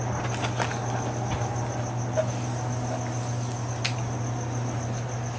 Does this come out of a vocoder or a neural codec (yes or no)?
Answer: no